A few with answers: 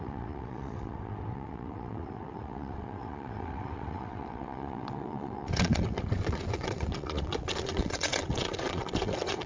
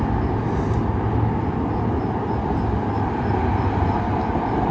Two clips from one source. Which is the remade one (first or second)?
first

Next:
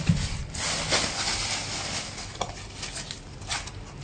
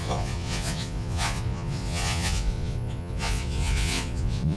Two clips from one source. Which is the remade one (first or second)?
second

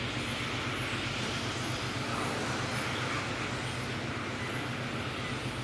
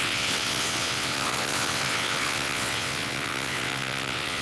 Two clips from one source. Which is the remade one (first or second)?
second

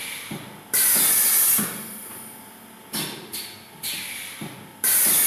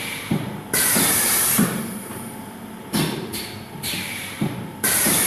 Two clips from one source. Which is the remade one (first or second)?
second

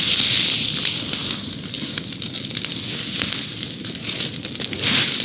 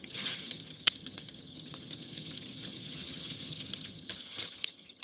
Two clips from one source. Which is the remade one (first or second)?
second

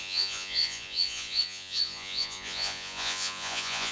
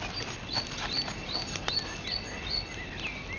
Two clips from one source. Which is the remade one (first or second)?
first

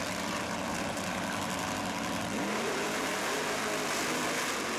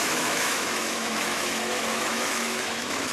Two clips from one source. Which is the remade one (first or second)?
second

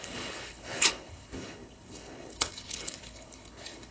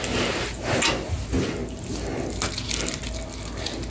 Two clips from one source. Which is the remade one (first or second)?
first